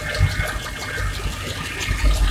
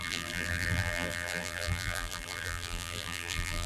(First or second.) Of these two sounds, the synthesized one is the second